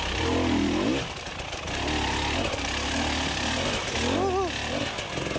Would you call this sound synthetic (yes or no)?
no